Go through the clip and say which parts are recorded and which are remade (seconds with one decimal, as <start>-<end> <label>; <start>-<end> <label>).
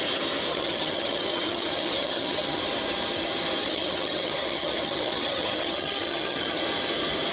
0.0-0.5 recorded; 0.5-2.6 remade; 2.6-3.6 recorded; 3.6-6.6 remade; 6.6-7.3 recorded